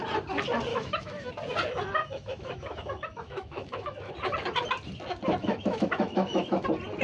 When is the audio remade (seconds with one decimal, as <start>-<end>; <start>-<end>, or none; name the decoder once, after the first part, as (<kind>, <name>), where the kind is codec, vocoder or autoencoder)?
0.7-1.3 (autoencoder, DAC-VAE); 2.0-4.1; 5.4-6.6